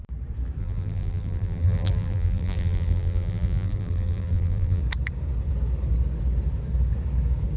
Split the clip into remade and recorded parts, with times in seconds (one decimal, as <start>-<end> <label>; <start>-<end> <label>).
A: 0.0-0.6 recorded; 0.6-4.8 remade; 4.8-7.6 recorded